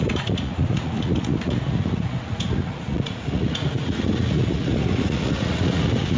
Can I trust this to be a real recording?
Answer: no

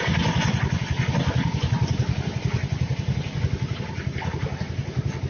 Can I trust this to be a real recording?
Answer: yes